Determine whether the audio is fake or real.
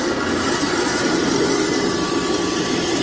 real